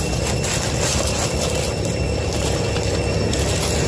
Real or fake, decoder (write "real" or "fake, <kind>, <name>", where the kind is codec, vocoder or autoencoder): real